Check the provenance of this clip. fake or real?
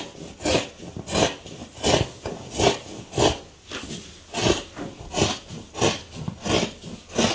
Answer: real